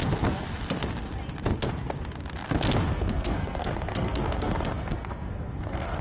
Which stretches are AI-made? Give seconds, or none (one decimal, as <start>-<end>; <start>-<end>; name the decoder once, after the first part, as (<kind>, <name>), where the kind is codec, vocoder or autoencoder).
2.9-6.0 (codec, SNAC)